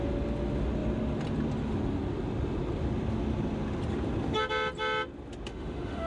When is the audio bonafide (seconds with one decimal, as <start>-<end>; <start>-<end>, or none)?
0.0-5.5